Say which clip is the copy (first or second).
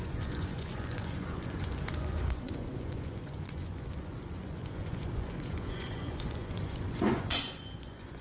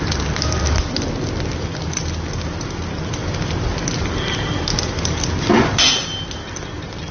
first